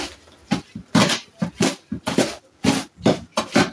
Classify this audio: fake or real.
real